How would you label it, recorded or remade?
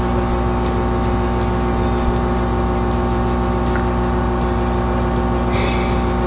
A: recorded